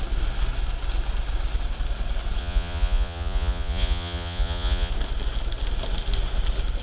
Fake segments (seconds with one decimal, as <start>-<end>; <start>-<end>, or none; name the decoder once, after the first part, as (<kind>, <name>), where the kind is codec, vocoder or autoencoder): 2.4-4.9 (vocoder, Vocos)